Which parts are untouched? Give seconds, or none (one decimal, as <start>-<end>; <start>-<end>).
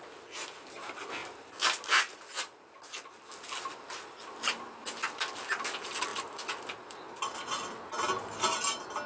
0.0-9.1